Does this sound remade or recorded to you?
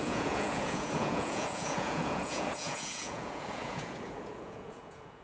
remade